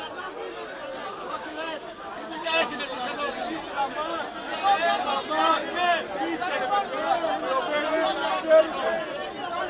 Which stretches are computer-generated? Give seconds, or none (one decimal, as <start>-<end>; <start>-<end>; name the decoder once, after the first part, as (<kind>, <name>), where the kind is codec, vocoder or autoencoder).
1.1-2.8 (codec, DAC)